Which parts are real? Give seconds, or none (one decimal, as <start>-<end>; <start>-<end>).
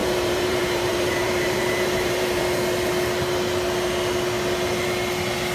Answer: 2.4-5.5